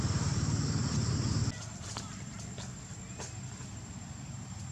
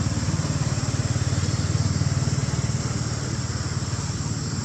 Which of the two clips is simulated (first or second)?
first